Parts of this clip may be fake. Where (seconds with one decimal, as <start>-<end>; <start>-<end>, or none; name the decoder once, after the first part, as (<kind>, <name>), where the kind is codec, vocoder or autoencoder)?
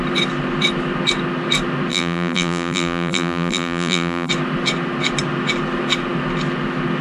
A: 1.9-4.3 (vocoder, BigVGAN v2)